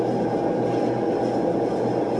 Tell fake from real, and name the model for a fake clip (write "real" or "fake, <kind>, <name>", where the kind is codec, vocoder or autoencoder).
real